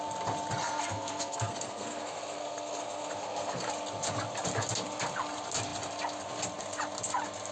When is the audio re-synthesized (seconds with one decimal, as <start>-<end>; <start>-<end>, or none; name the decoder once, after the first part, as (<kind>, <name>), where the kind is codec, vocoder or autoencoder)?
0.6-3.7 (codec, SNAC)